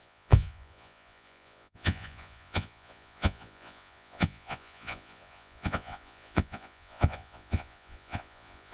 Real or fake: fake